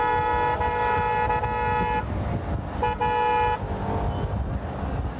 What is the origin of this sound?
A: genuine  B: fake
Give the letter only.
A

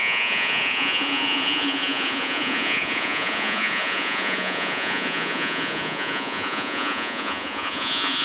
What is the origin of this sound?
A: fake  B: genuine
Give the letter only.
A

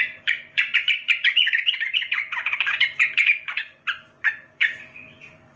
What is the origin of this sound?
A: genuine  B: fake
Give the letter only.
B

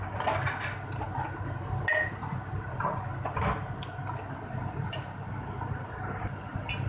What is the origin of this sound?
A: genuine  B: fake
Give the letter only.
A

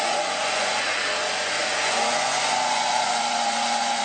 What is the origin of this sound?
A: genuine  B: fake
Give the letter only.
B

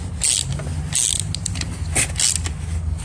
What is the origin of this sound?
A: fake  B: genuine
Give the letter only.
B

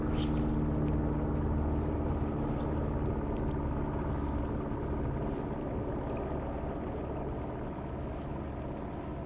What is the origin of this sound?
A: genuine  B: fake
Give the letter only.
A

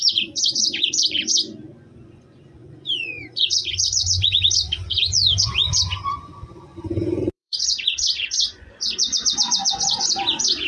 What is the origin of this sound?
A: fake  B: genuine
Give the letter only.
A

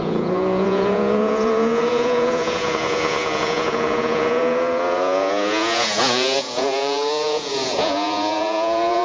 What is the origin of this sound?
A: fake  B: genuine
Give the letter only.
A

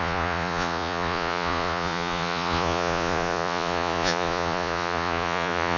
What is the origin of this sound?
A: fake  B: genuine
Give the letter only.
A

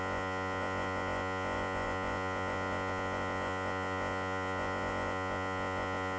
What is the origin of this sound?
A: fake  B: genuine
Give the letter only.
A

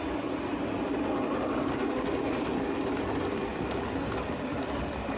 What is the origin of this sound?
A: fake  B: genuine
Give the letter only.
B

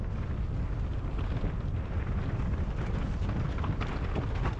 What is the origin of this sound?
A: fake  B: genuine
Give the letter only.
B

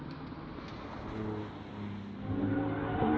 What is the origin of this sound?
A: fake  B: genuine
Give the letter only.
B